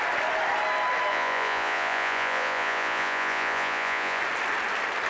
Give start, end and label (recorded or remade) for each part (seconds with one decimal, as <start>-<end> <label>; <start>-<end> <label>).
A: 0.0-1.1 recorded; 1.1-4.2 remade; 4.2-5.1 recorded